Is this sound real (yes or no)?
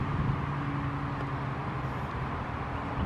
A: yes